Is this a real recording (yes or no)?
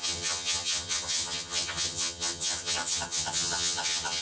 no